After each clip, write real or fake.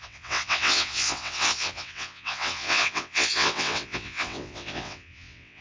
fake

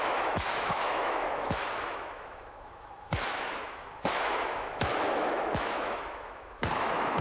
fake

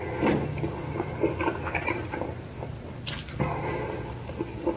real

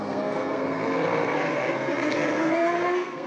fake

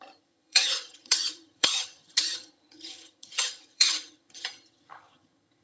fake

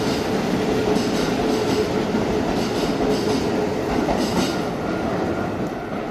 real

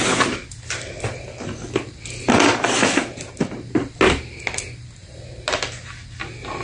real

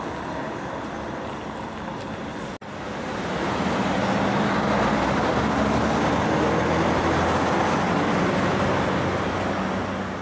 real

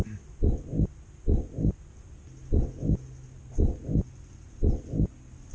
real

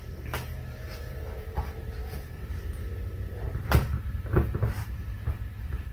fake